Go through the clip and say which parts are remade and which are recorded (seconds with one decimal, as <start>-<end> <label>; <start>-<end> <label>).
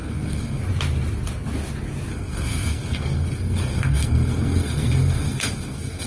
0.0-0.6 remade; 0.6-2.1 recorded; 2.1-6.1 remade